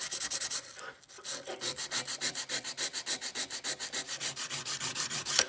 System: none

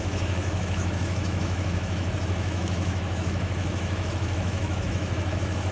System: autoencoder, DAC-VAE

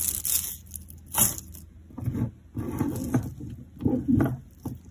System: none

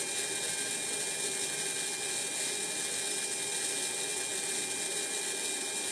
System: none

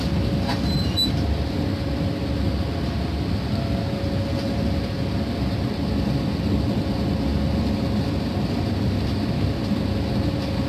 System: none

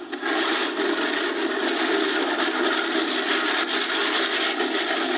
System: none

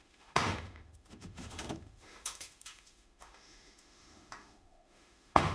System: autoencoder, DAC-VAE